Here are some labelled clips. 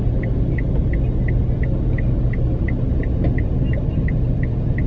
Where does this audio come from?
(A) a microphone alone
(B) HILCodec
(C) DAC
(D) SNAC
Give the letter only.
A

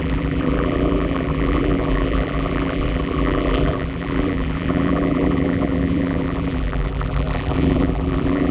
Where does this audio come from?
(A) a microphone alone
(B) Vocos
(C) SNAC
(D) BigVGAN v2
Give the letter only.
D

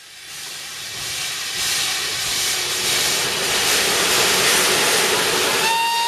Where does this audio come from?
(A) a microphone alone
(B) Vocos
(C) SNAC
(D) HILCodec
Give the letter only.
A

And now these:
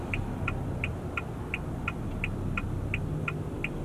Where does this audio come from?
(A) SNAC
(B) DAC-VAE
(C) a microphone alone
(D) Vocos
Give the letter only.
C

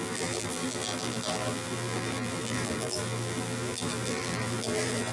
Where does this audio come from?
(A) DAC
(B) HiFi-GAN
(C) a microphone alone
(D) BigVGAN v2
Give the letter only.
D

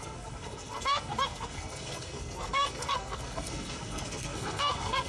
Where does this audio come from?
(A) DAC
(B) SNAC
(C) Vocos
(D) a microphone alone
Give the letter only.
B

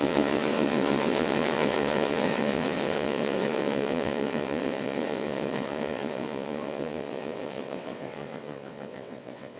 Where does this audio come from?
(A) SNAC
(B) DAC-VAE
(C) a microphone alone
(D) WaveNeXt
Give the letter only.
D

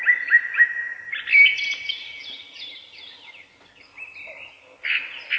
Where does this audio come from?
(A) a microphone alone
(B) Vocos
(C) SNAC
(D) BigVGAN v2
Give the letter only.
A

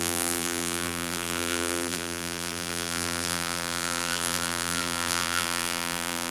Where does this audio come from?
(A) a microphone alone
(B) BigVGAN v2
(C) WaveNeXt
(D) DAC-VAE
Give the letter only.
B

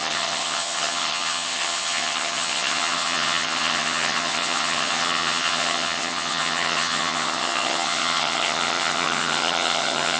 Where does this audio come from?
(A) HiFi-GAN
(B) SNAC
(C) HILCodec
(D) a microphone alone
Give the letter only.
A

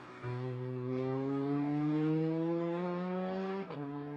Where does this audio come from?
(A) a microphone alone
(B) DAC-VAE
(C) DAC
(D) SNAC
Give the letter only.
C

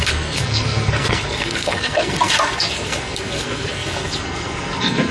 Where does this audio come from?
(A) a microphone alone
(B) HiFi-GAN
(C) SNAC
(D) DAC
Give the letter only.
C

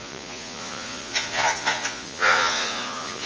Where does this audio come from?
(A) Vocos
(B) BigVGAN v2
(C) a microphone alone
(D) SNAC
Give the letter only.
A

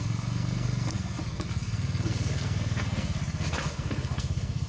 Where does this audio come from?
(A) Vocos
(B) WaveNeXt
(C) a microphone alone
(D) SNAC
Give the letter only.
D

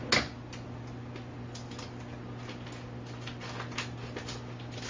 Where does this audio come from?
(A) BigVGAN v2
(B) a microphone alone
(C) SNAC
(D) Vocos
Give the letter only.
B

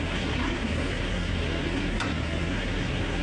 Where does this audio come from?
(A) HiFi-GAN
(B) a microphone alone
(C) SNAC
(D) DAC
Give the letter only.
C